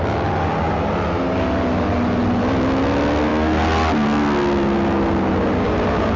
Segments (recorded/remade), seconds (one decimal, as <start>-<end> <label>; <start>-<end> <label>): 0.0-6.2 recorded